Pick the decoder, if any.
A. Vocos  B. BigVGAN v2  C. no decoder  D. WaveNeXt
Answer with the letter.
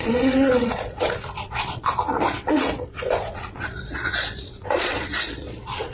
A